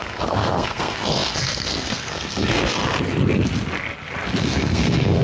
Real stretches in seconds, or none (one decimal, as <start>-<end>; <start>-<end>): 2.8-4.4